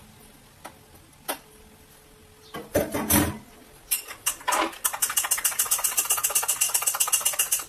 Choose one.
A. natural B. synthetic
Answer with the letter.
A